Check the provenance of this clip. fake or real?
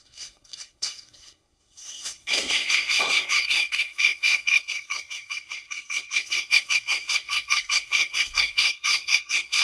fake